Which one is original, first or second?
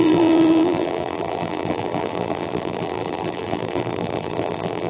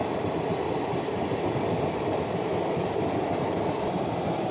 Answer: second